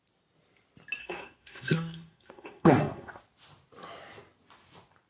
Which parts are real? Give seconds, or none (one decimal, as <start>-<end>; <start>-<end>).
0.0-1.0; 3.2-5.1